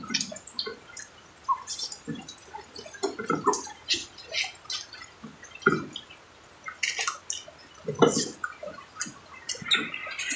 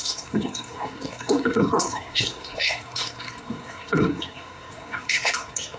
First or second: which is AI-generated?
second